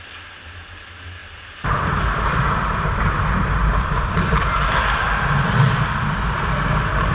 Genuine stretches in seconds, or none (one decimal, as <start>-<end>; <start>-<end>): 0.0-1.2; 4.8-7.1